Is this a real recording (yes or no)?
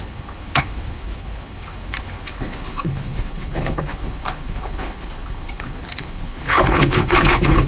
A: no